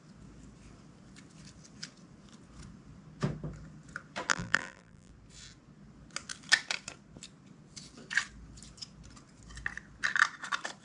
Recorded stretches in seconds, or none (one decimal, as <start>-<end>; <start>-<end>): 0.0-4.3; 5.1-10.8

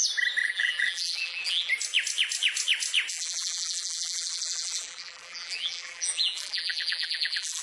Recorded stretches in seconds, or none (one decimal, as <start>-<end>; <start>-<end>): 0.0-0.4; 1.7-3.1

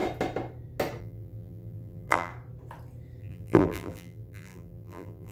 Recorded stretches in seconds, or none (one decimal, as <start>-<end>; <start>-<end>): 0.0-1.0; 2.3-3.2

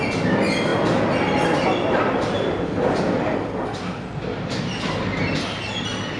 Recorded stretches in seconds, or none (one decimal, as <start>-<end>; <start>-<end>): 0.0-6.2

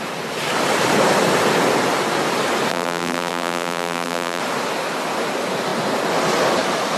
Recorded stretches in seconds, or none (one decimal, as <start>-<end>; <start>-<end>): 0.0-2.7; 4.4-7.0

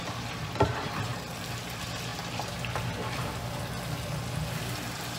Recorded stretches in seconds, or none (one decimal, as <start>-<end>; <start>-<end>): 0.0-2.1; 3.6-5.2

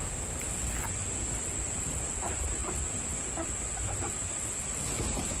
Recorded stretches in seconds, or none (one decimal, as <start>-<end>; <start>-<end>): 0.0-5.4

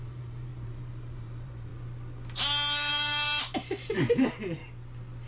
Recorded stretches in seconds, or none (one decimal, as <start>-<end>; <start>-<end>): 1.7-2.9; 4.6-5.3